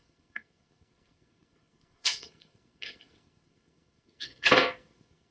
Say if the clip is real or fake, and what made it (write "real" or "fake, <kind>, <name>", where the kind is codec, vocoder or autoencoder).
fake, codec, SNAC